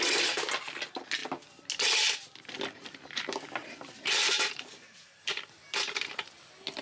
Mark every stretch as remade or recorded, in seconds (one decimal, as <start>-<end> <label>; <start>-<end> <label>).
0.0-3.6 recorded; 3.6-6.1 remade; 6.1-6.8 recorded